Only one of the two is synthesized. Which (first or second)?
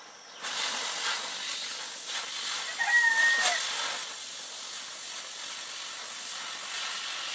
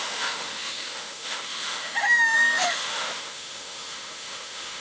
second